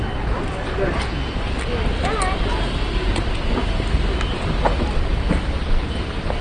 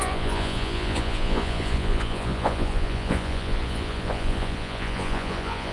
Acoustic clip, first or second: first